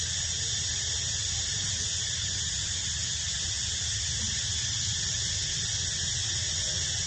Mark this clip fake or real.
real